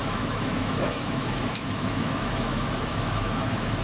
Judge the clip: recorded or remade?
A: remade